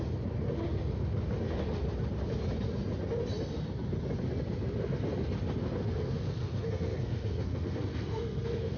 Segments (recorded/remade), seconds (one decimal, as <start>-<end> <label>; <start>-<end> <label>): 0.0-5.6 recorded; 5.6-8.8 remade